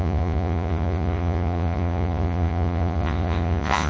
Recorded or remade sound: remade